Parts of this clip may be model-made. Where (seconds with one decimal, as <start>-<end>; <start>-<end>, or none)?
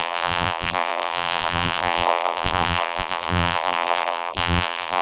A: 0.0-5.0